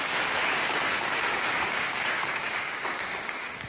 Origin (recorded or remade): remade